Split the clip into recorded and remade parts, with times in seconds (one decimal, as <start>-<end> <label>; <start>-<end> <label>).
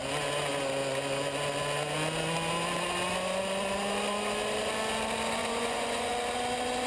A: 0.0-5.4 recorded; 5.4-6.1 remade; 6.1-6.9 recorded